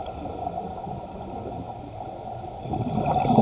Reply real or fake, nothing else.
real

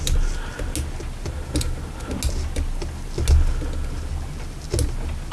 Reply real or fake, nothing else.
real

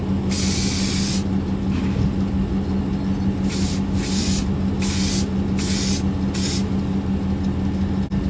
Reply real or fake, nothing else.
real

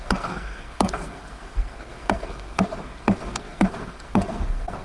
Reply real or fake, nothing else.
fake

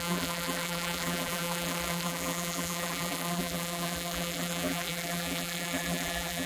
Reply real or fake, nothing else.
fake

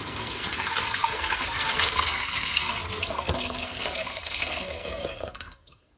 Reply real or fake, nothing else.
fake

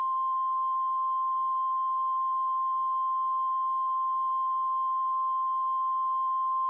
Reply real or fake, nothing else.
fake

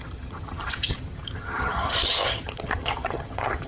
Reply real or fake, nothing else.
fake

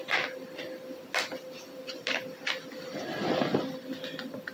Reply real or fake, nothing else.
real